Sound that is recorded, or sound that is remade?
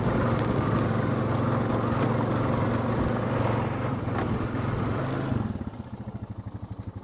recorded